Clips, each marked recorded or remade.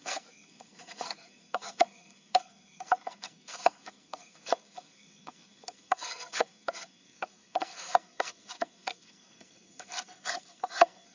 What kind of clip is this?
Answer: remade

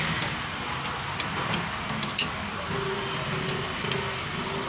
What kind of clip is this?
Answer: recorded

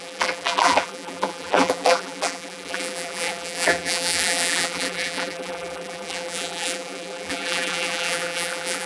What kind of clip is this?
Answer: remade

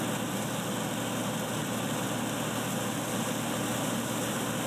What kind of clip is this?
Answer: recorded